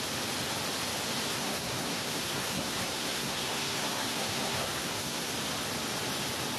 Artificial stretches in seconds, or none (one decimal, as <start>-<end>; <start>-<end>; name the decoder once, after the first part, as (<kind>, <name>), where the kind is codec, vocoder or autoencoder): 1.3-5.3 (codec, SNAC)